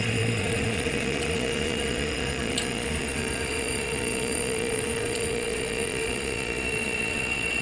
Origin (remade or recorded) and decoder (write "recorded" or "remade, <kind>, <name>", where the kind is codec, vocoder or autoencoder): remade, vocoder, Vocos